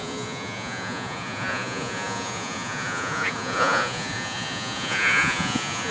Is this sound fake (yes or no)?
yes